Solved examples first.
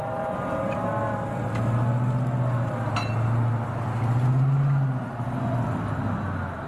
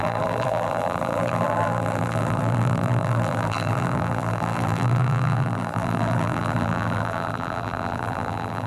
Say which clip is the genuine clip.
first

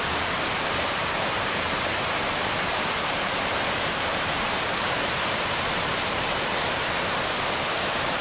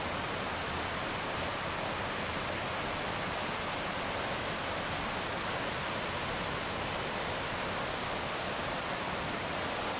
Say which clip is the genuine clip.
second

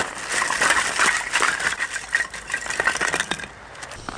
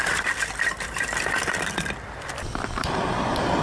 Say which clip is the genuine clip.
first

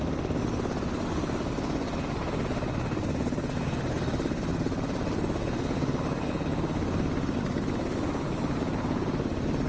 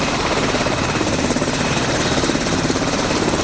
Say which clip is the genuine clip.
first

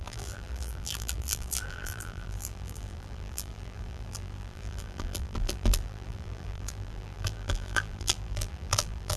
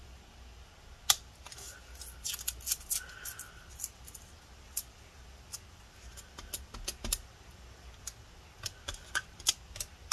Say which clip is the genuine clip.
second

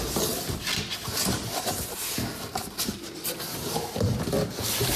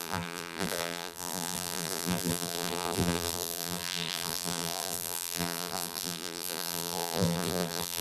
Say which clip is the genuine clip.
first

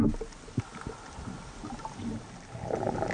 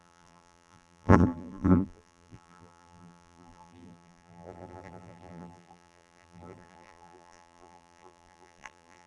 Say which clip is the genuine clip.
first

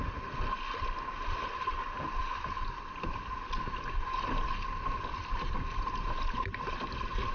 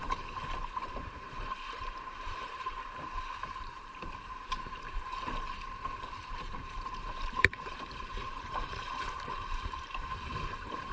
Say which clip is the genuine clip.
first